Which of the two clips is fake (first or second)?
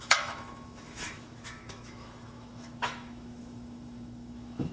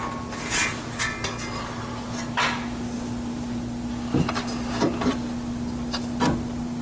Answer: first